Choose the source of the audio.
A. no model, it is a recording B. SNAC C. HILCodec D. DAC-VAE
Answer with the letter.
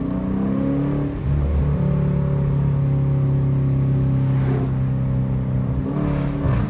A